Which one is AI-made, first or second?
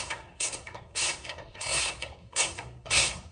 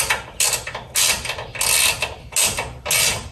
first